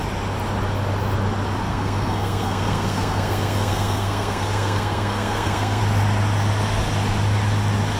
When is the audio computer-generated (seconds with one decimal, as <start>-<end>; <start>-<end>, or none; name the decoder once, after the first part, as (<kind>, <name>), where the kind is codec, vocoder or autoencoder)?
1.7-5.8 (codec, SNAC)